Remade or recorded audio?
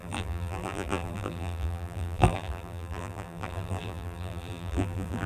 remade